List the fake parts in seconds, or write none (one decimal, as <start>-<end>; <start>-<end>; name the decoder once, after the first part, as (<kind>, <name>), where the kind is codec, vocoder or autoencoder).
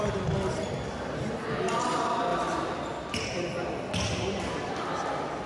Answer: none